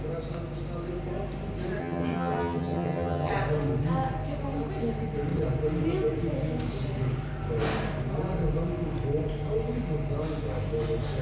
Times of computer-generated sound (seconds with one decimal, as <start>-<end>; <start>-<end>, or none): 1.8-3.3